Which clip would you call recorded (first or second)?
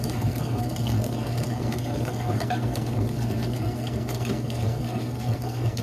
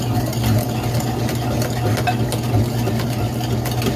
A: second